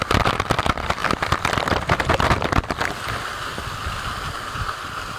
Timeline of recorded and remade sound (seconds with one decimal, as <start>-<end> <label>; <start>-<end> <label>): 0.0-1.0 recorded; 1.0-2.7 remade; 2.7-3.5 recorded; 3.5-4.6 remade; 4.6-5.2 recorded